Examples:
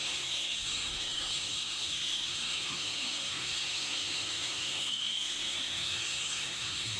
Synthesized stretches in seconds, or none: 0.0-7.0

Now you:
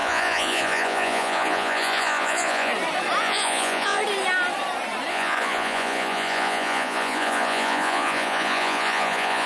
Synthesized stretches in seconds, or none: 0.0-2.7; 3.2-4.0; 5.1-9.5

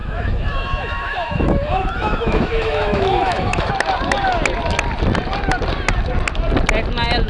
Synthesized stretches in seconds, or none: 0.0-3.7

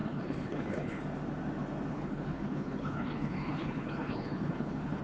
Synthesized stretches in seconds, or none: 0.0-1.0; 1.9-5.0

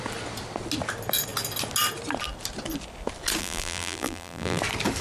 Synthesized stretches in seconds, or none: 3.4-4.6

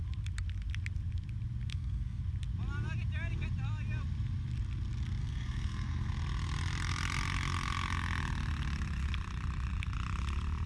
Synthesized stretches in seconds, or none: 1.7-2.2; 5.2-6.1